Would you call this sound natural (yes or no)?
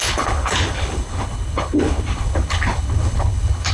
no